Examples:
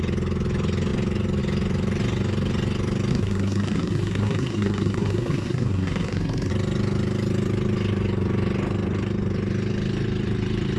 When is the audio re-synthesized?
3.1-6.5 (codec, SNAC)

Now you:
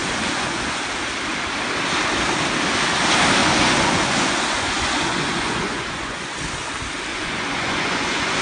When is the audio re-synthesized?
0.0-0.8 (vocoder, Vocos); 3.4-6.4; 7.1-8.4